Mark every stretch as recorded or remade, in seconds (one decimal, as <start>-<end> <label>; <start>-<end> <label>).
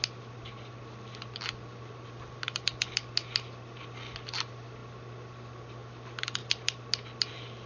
0.0-7.7 recorded